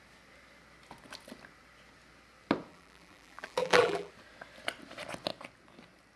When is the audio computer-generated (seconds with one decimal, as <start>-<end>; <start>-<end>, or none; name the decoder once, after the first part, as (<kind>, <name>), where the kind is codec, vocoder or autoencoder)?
2.7-4.1 (vocoder, BigVGAN v2)